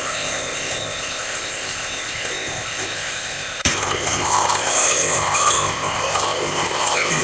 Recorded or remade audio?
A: remade